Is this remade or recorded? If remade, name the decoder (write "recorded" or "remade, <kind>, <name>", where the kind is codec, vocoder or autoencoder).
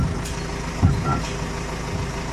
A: recorded